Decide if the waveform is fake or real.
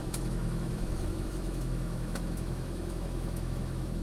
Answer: fake